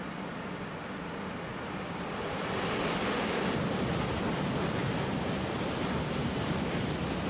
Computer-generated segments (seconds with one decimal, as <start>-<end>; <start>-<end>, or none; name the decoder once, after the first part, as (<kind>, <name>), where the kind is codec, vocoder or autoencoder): 0.0-7.3 (vocoder, BigVGAN v2)